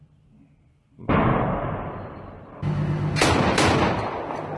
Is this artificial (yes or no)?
no